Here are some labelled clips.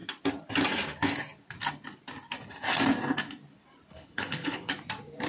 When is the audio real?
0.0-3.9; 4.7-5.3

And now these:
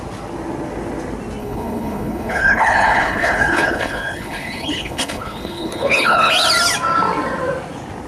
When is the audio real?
0.0-1.4; 6.3-8.1

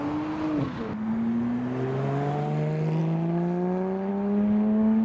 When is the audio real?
0.0-5.0

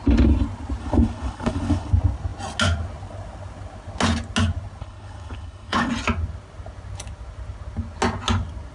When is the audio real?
0.0-0.8; 1.9-4.8; 5.9-8.7

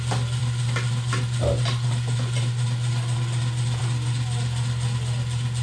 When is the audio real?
0.0-5.6

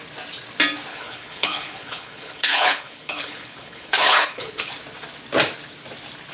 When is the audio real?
0.0-0.9; 4.7-6.3